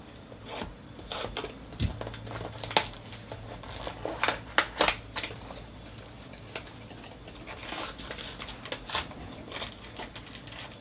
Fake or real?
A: real